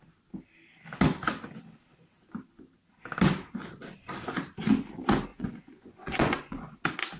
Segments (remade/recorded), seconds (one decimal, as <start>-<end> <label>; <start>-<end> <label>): 0.0-5.3 recorded; 5.3-6.8 remade; 6.8-7.2 recorded